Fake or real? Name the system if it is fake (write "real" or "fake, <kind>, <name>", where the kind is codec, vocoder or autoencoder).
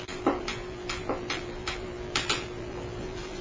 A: fake, vocoder, BigVGAN v2